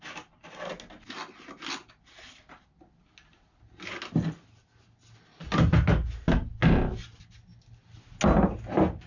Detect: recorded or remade recorded